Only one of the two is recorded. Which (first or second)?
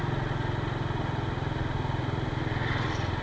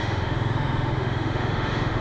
first